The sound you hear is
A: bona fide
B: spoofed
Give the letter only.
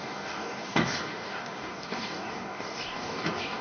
B